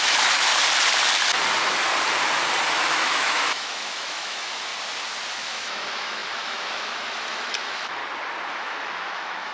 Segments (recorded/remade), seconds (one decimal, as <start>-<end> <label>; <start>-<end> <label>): 0.0-0.5 remade; 0.5-2.7 recorded; 2.7-4.7 remade; 4.7-5.3 recorded; 5.3-8.0 remade; 8.0-8.5 recorded; 8.5-9.5 remade